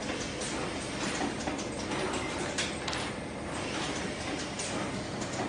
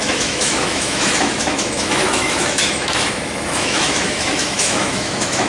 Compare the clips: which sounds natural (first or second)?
first